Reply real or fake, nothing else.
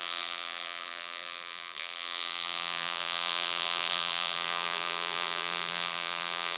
fake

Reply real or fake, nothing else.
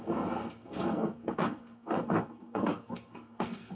fake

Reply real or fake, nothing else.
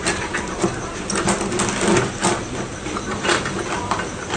real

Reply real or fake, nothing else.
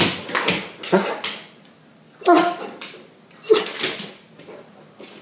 real